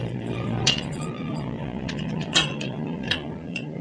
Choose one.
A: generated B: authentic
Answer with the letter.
A